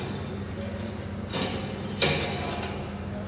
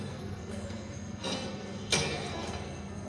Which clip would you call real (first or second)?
first